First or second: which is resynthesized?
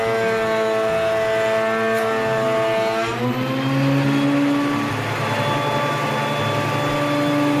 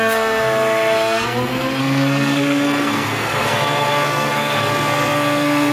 second